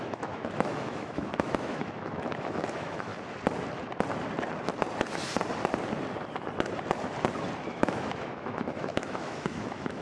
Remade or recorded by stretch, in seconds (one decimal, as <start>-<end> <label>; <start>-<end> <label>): 0.0-3.1 remade; 3.1-7.7 recorded; 7.7-10.0 remade